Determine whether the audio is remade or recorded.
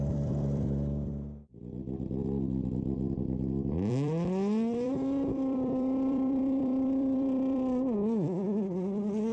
remade